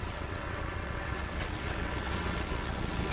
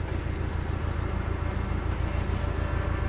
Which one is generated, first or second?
first